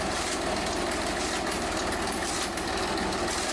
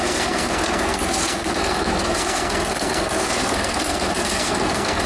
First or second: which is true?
first